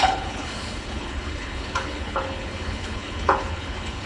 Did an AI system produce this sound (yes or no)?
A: yes